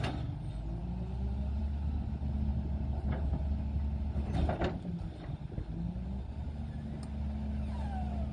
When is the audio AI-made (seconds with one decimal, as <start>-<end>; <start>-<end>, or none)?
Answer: none